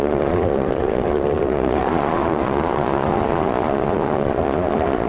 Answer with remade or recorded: remade